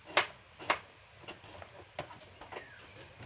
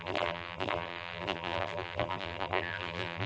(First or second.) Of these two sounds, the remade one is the second